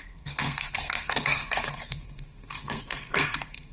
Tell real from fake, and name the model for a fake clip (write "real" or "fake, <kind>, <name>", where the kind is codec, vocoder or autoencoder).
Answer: fake, codec, SNAC